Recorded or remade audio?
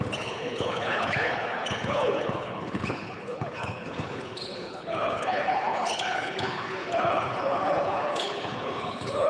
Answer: remade